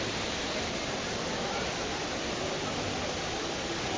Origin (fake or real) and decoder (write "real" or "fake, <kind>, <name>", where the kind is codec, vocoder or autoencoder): real